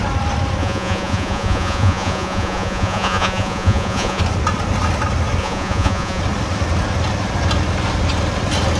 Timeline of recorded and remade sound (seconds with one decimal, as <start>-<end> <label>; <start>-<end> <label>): 0.0-0.6 recorded; 0.6-4.2 remade; 4.2-5.4 recorded; 5.4-6.2 remade; 6.2-8.8 recorded